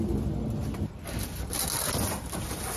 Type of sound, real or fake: real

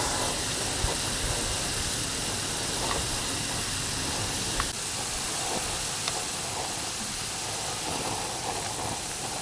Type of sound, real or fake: real